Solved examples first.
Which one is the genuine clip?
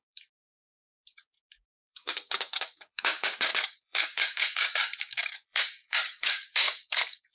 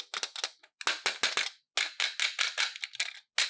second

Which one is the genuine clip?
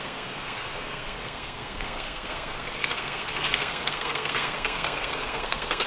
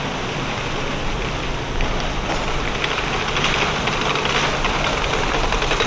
second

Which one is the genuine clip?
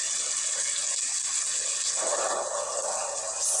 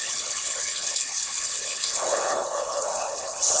first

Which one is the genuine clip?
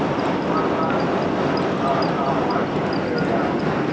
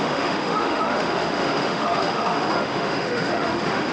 first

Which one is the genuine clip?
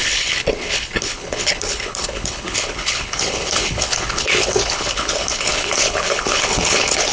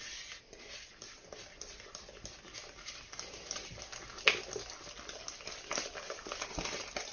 second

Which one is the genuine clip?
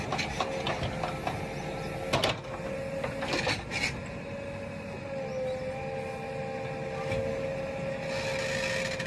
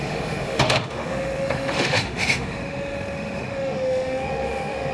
first